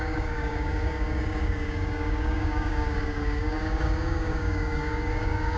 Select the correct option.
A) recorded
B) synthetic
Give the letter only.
B